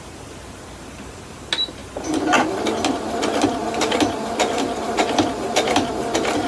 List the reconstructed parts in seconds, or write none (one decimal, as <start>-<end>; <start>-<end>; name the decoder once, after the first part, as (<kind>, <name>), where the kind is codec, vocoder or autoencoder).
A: none